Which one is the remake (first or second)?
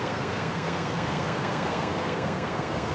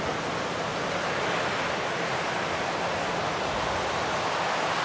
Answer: first